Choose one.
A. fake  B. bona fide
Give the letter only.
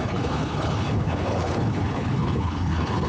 A